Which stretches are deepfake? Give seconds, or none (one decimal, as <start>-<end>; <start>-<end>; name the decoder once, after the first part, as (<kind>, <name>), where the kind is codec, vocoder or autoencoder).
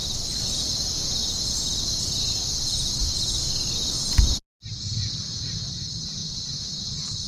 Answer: none